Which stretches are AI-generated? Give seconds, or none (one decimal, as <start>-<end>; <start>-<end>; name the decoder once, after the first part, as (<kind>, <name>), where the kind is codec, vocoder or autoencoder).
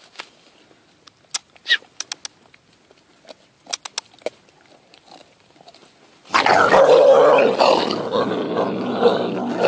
none